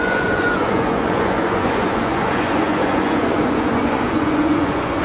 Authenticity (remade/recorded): remade